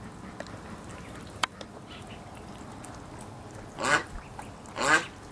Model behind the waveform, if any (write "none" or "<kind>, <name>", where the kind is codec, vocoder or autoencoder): none